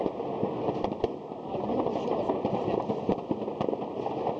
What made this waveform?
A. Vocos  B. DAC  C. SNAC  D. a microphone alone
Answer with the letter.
D